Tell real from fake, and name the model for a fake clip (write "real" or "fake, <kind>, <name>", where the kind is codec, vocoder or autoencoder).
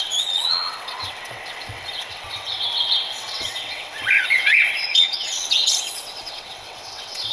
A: fake, vocoder, WaveNeXt